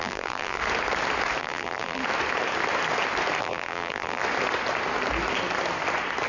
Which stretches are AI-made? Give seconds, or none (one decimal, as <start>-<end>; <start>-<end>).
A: 0.0-0.6; 1.4-2.0; 3.4-4.2